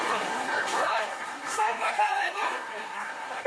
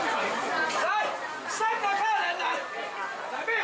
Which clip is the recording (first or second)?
second